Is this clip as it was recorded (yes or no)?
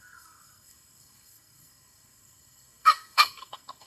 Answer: no